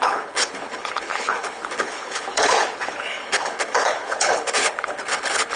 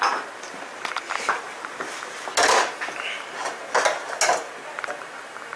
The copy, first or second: first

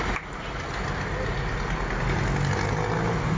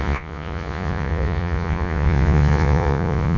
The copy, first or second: second